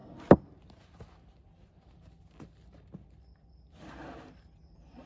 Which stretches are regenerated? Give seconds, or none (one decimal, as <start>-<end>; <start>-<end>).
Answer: none